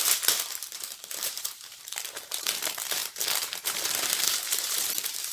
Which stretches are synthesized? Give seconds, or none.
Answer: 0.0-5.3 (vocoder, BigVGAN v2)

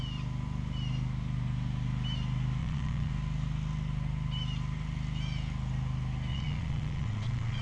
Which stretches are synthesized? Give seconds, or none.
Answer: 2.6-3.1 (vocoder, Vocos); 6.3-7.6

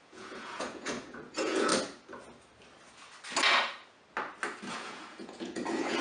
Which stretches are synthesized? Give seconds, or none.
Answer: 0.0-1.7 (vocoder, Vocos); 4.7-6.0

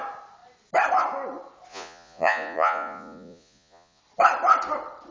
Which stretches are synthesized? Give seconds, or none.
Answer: 1.7-4.0 (vocoder, Vocos)

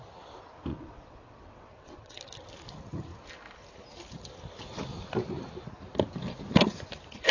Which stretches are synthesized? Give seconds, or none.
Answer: 0.7-2.2 (vocoder, WaveNeXt)

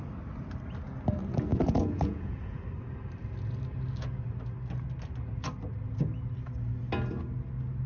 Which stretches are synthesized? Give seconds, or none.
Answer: 1.5-2.6 (vocoder, Vocos)